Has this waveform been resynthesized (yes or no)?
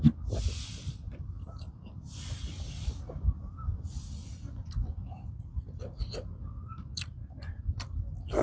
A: no